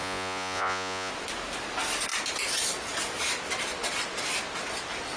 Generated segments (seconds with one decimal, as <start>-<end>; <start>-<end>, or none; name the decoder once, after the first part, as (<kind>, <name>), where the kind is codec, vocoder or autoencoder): 0.0-1.1 (vocoder, Vocos)